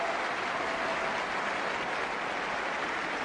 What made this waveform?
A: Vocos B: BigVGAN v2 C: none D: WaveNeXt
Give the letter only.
C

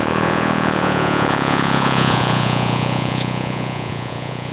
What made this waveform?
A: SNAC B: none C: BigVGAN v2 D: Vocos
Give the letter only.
D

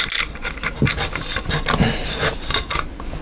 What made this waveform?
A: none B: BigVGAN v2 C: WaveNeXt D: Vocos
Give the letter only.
A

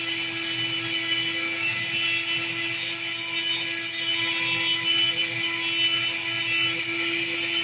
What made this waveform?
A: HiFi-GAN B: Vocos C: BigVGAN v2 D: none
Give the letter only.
D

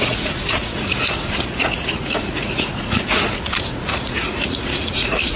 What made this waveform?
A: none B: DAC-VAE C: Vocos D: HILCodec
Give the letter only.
C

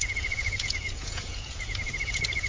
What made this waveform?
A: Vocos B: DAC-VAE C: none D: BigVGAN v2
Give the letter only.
A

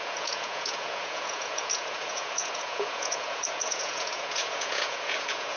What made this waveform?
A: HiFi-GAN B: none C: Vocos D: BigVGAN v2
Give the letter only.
C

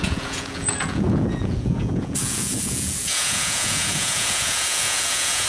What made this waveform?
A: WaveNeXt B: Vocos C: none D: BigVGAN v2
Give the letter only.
B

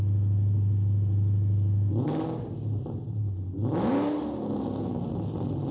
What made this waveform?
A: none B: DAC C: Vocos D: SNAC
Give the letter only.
A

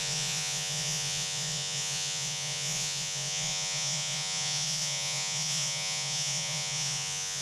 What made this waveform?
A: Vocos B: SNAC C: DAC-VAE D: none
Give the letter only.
A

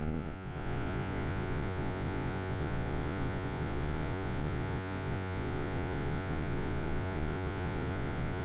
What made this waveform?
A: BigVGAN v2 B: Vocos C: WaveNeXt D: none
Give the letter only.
B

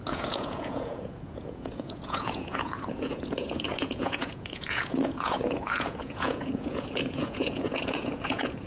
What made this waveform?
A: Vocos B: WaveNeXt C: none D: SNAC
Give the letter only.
A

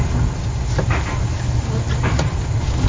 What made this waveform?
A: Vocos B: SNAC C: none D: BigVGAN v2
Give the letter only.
C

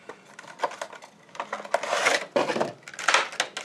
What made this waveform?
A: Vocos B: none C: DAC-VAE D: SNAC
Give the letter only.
B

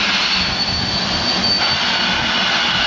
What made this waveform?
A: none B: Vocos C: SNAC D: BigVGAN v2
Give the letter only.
A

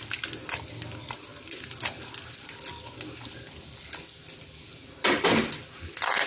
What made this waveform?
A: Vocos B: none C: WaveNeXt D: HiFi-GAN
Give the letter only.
B